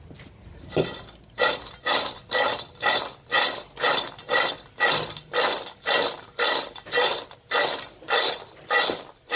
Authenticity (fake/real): real